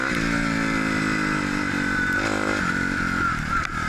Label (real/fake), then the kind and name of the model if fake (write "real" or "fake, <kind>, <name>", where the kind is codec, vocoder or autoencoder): real